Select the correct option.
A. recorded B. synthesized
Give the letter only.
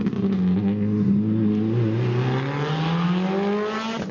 A